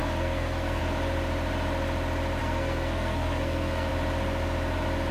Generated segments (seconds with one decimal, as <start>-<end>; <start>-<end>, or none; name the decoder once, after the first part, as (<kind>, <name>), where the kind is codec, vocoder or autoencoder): 0.0-0.8 (codec, SNAC); 2.4-3.9